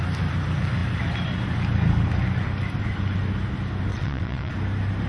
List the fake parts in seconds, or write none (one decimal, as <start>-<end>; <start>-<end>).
3.9-4.5